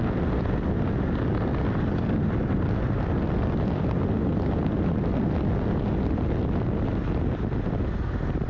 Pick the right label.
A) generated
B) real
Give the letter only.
B